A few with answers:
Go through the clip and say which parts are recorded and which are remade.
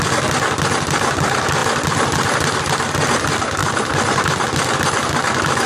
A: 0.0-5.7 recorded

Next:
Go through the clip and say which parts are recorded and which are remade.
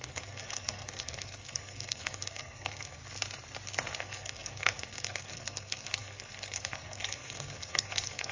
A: 0.0-3.0 remade; 3.0-4.0 recorded; 4.0-8.3 remade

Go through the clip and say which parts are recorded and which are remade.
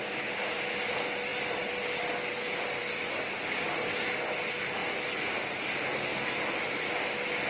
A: 0.0-7.5 recorded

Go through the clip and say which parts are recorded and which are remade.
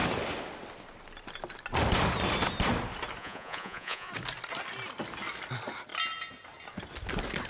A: 0.0-3.2 recorded; 3.2-4.1 remade; 4.1-7.5 recorded